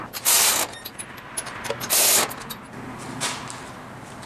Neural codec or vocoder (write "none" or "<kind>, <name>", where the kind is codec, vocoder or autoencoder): none